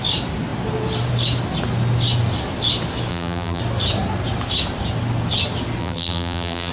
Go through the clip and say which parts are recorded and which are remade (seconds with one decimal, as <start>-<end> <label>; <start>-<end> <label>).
0.0-3.1 recorded; 3.1-3.6 remade; 3.6-5.8 recorded; 5.8-6.7 remade